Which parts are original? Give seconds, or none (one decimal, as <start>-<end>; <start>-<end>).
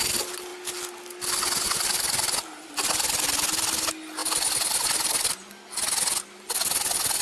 0.0-7.2